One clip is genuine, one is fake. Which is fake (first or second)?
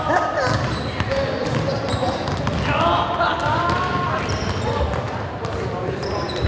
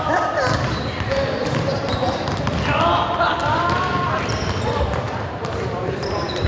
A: second